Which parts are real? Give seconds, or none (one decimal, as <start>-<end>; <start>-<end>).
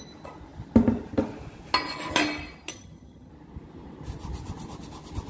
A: 0.0-2.7; 3.3-5.3